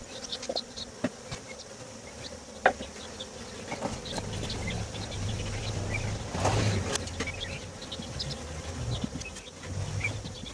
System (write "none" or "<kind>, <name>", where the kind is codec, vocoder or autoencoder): none